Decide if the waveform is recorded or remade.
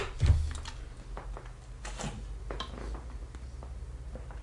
recorded